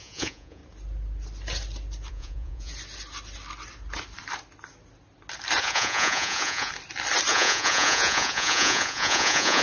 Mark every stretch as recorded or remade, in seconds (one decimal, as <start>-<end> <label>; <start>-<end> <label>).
0.0-0.6 remade; 0.6-2.1 recorded; 2.1-2.7 remade; 2.7-5.6 recorded; 5.6-6.7 remade; 6.7-7.3 recorded; 7.3-9.6 remade

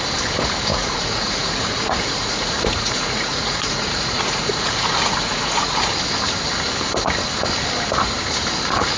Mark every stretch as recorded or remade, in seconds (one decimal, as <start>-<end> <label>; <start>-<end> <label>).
0.0-0.7 recorded; 0.7-5.9 remade; 5.9-9.0 recorded

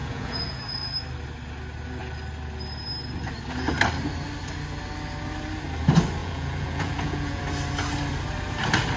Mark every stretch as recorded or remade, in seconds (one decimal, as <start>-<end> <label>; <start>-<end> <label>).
0.0-0.6 remade; 0.6-6.2 recorded; 6.2-7.4 remade; 7.4-9.0 recorded

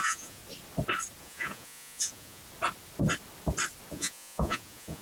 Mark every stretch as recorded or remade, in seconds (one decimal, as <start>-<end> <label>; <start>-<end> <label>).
0.0-0.4 remade; 0.4-1.2 recorded; 1.2-2.4 remade; 2.4-3.9 recorded; 3.9-5.0 remade

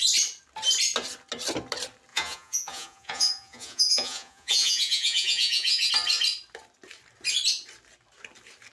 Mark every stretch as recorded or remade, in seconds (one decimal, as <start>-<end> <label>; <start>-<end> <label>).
0.0-2.1 recorded; 2.1-5.9 remade; 5.9-8.7 recorded

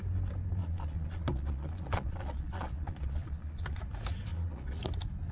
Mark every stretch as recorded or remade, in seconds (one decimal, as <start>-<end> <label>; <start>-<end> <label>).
0.0-0.6 recorded; 0.6-3.8 remade; 3.8-4.3 recorded; 4.3-4.8 remade; 4.8-5.3 recorded

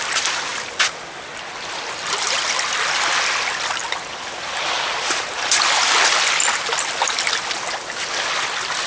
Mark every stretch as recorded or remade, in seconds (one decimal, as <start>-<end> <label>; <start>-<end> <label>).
0.0-8.9 recorded